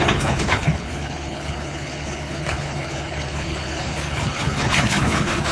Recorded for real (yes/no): no